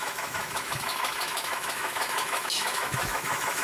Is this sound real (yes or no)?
no